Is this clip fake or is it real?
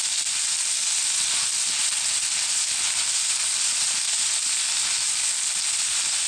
real